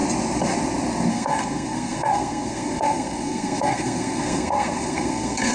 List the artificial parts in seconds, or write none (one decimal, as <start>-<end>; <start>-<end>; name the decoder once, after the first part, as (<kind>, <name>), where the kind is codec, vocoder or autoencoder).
1.1-5.5 (codec, SNAC)